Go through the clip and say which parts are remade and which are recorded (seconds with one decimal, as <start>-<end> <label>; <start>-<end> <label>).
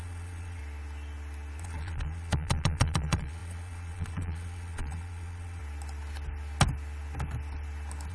0.0-0.6 remade; 0.6-1.6 recorded; 1.6-5.6 remade; 5.6-8.1 recorded